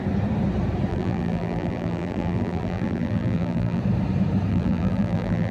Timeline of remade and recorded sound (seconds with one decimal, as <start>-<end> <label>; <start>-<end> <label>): 0.0-0.9 recorded; 0.9-3.8 remade; 3.8-4.5 recorded; 4.5-5.5 remade